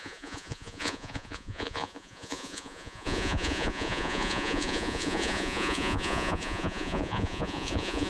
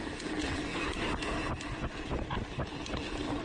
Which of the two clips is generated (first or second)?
first